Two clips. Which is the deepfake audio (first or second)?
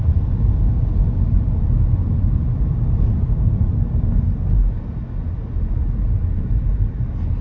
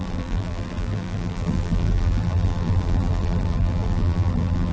second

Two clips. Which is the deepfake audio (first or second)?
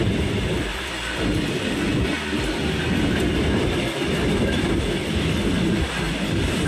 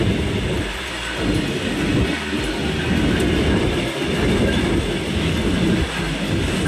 first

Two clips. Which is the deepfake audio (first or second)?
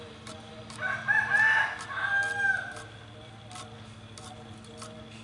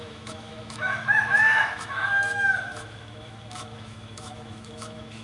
second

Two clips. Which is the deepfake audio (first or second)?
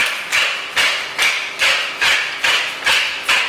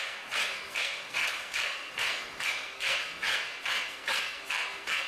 second